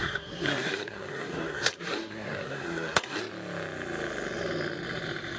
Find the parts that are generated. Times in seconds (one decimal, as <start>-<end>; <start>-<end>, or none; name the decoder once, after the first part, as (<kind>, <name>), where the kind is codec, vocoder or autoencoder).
0.0-3.2 (codec, SNAC)